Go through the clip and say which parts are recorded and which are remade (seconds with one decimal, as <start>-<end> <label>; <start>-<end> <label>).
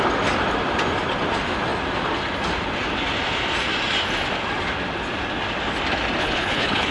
0.0-6.2 recorded; 6.2-6.9 remade